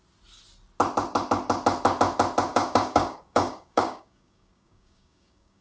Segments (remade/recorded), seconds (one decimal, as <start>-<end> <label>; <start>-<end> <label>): 0.0-2.5 recorded; 2.5-5.6 remade